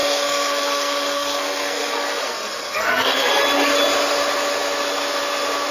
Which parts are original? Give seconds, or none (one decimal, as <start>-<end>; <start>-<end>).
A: 3.4-5.7